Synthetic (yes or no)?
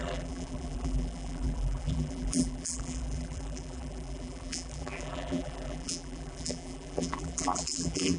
yes